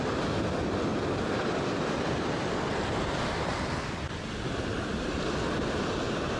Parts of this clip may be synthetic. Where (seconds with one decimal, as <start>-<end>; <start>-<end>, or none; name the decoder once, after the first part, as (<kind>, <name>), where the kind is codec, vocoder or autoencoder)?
0.9-2.5 (vocoder, BigVGAN v2); 3.5-4.9